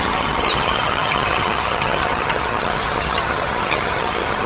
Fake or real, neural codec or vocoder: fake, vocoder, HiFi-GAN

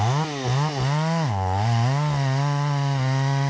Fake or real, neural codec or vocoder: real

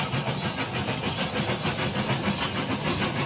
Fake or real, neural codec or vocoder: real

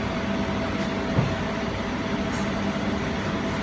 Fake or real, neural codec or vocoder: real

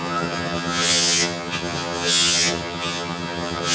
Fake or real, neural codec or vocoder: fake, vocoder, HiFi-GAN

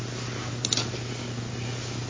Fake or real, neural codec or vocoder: real